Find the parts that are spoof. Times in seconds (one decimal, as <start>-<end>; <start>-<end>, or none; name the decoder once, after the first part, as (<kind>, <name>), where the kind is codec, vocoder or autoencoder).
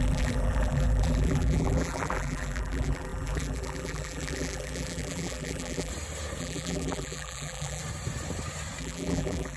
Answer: 0.0-5.9 (vocoder, BigVGAN v2); 6.4-7.8; 8.8-9.6